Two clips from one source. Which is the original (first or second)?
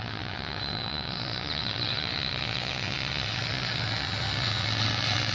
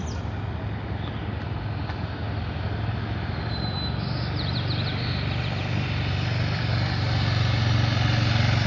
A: second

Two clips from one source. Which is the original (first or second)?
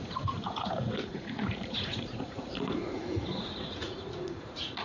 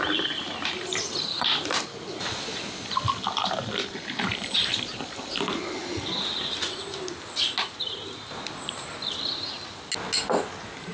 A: second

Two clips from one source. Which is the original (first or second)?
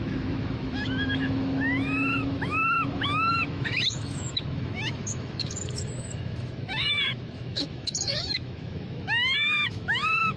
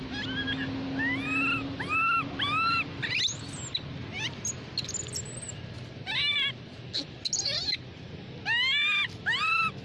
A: second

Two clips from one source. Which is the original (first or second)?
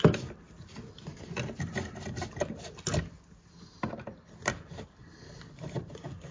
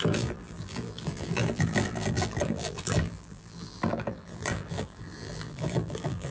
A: first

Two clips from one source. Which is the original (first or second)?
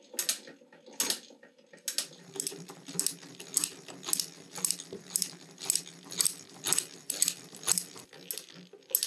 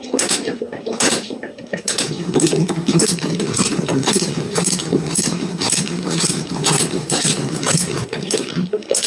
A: first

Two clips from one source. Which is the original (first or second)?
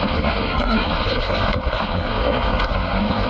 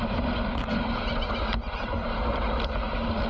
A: second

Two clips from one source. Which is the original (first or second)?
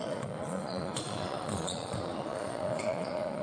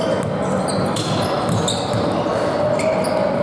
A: second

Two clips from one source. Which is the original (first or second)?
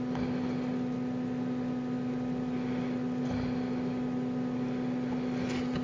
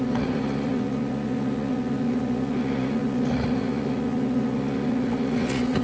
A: first